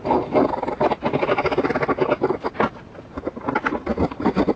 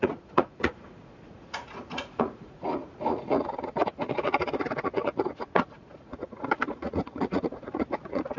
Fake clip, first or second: second